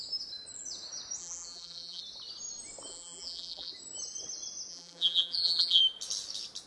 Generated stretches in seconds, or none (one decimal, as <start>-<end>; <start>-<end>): 1.2-2.0; 2.9-3.7; 4.7-5.8